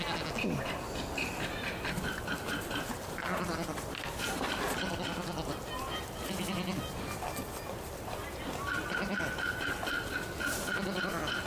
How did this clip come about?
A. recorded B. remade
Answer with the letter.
A